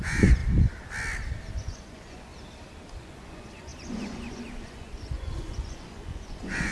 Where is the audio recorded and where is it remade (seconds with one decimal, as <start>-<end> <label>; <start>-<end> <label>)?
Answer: 0.0-0.4 remade; 0.4-1.5 recorded; 1.5-2.3 remade; 2.3-3.0 recorded; 3.0-6.7 remade